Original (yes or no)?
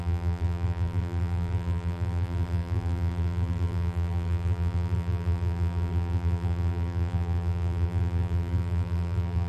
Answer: no